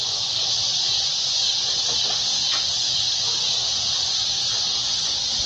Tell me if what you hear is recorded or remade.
remade